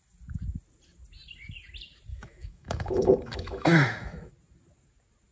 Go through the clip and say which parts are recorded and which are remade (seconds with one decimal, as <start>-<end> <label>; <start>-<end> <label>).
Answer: 0.0-2.1 recorded; 2.1-4.3 remade; 4.3-5.3 recorded